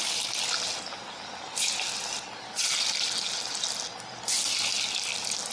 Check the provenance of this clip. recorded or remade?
recorded